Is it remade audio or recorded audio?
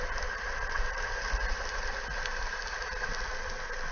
recorded